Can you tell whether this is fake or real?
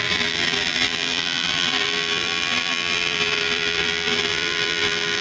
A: fake